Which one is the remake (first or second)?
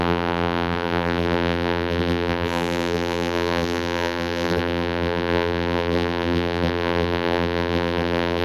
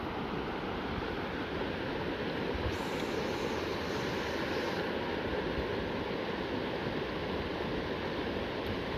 first